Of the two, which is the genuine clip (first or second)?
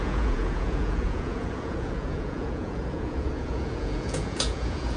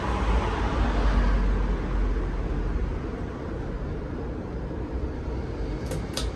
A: second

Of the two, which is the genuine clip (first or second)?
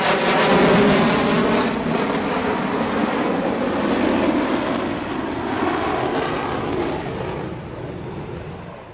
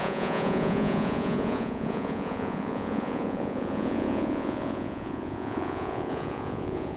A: first